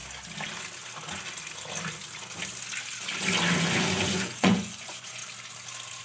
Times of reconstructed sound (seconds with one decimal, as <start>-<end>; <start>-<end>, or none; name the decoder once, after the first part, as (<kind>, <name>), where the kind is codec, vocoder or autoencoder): 3.6-5.2 (vocoder, Vocos)